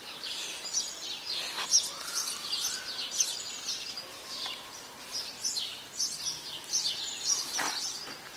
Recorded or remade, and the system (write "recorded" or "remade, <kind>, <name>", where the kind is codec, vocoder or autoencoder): remade, vocoder, BigVGAN v2